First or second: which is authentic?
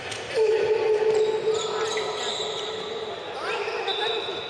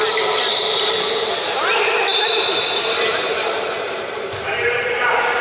first